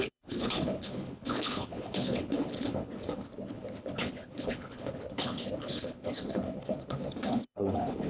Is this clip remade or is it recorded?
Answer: remade